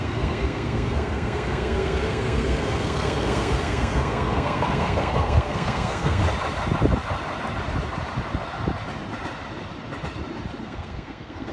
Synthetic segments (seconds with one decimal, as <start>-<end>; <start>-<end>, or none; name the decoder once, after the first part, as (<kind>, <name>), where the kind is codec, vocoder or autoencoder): 0.0-6.2 (codec, SNAC); 10.6-11.5

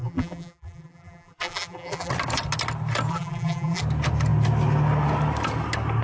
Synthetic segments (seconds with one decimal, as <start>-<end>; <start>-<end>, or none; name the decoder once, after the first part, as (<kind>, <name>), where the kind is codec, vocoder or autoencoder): 0.0-2.1 (vocoder, BigVGAN v2); 3.1-3.8

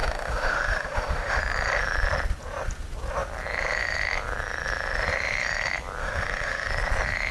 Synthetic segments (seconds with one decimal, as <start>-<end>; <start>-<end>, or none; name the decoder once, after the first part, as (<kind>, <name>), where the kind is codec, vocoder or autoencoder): 0.0-1.4 (autoencoder, DAC-VAE); 6.0-6.7